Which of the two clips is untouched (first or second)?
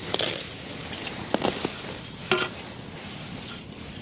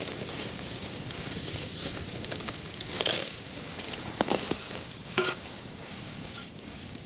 first